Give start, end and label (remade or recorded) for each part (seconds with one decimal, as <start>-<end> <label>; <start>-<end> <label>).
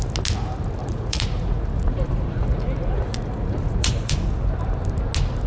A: 0.0-0.8 recorded; 0.8-4.1 remade; 4.1-5.5 recorded